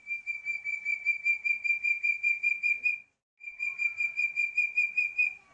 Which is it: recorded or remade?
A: recorded